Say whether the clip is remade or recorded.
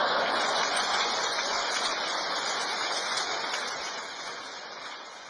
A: remade